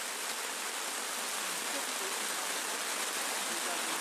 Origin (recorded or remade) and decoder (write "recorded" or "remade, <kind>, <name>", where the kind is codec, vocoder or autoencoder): recorded